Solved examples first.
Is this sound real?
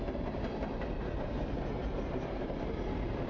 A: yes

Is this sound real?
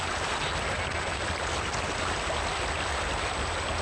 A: yes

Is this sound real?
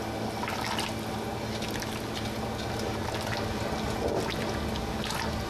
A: yes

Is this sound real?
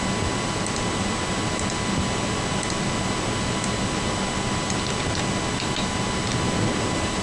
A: yes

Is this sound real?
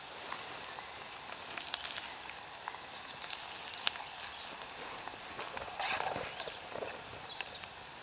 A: yes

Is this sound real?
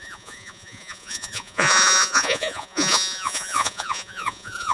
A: no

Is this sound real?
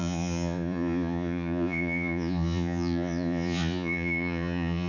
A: no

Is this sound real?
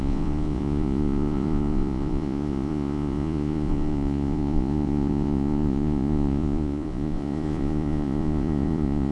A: no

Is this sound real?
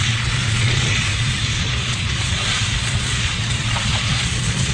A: no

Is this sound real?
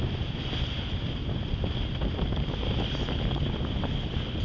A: yes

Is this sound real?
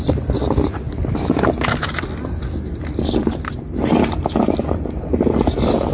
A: yes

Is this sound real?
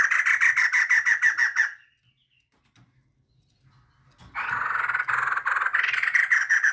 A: yes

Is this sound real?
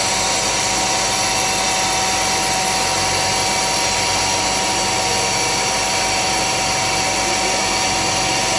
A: yes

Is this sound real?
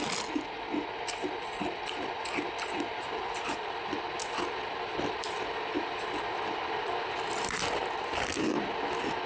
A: yes